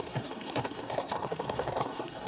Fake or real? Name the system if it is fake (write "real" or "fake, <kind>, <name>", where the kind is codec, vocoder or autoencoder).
fake, codec, SNAC